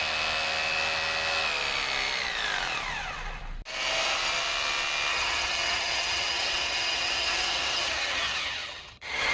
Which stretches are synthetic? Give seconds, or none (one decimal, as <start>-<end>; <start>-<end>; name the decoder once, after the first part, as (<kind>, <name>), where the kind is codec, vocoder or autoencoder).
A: 5.1-9.3 (vocoder, HiFi-GAN)